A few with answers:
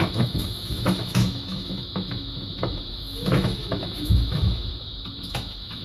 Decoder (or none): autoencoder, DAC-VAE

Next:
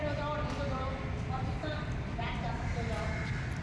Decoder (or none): none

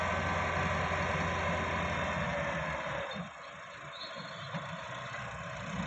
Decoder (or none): none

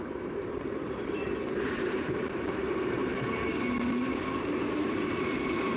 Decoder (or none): vocoder, BigVGAN v2